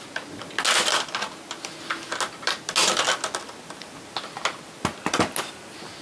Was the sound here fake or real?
real